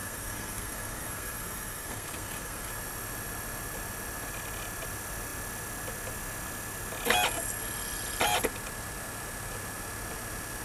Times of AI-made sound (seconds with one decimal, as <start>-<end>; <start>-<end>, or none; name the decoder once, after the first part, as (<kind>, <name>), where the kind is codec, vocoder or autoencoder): 0.0-2.7 (codec, SNAC)